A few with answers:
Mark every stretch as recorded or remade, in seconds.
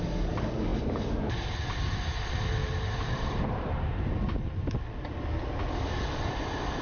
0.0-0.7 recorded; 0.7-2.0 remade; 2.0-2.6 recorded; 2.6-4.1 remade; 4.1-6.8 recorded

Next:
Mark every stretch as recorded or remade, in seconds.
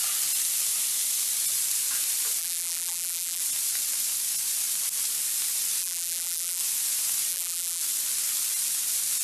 0.0-2.4 recorded; 2.4-3.4 remade; 3.4-5.8 recorded; 5.8-6.6 remade; 6.6-7.3 recorded; 7.3-7.8 remade; 7.8-9.2 recorded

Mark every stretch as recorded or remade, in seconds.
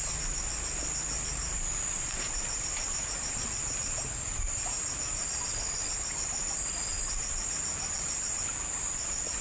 0.0-1.4 recorded; 1.4-2.2 remade; 2.2-9.4 recorded